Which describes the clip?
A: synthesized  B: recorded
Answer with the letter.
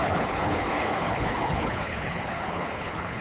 A